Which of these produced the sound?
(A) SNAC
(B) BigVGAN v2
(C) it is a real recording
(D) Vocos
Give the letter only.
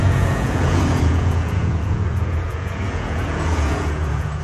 D